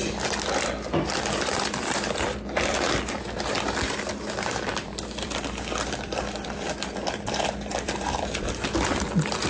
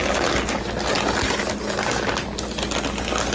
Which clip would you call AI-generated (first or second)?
first